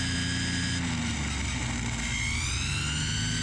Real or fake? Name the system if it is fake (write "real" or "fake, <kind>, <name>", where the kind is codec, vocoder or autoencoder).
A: real